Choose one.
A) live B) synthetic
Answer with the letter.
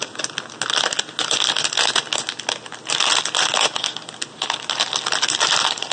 A